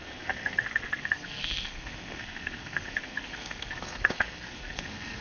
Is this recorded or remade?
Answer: remade